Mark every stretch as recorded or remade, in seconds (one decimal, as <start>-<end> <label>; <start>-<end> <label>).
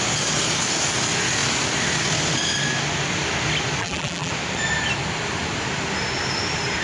0.0-3.8 recorded; 3.8-4.3 remade; 4.3-6.8 recorded